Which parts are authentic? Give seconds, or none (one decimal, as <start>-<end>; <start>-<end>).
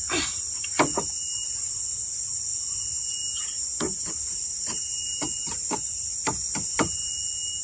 0.0-1.0; 2.5-4.1; 7.0-7.6